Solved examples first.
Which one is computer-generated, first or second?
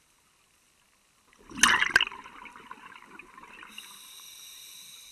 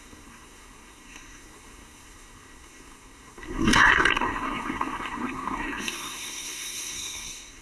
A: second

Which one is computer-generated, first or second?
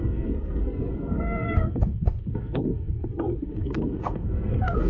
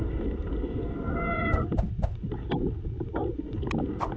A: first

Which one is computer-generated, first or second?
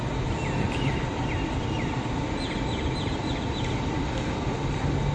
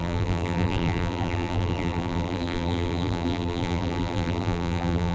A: second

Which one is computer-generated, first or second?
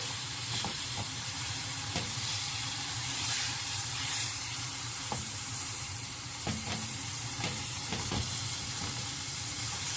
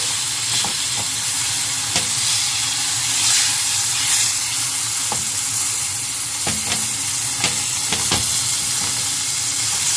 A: first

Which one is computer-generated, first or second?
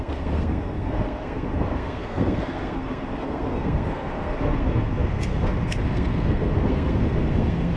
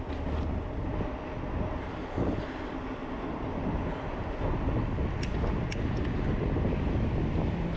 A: first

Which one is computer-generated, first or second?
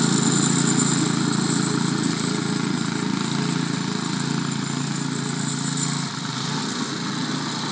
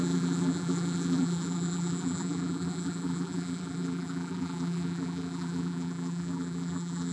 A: second